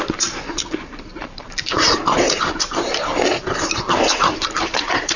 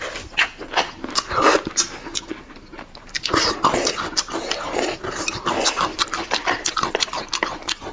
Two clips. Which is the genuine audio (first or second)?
second